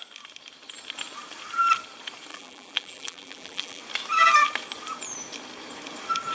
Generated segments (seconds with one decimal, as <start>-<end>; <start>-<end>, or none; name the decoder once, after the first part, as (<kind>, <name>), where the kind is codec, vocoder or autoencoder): 2.3-3.8 (vocoder, BigVGAN v2)